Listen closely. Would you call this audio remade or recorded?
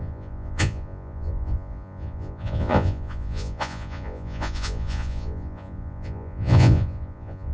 remade